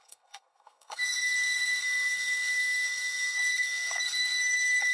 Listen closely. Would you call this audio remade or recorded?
remade